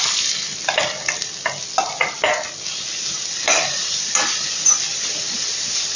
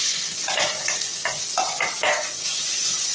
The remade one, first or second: second